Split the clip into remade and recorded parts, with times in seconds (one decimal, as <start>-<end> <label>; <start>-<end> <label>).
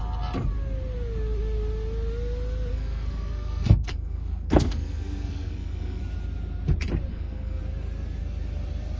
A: 0.0-2.7 recorded; 2.7-6.0 remade; 6.0-7.1 recorded; 7.1-7.6 remade; 7.6-9.0 recorded